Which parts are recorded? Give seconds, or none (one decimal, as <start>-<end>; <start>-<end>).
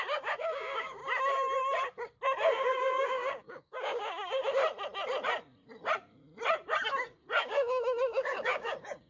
1.0-2.5; 4.6-7.4